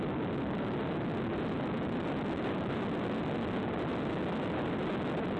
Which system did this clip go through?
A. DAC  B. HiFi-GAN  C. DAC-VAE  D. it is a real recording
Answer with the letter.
D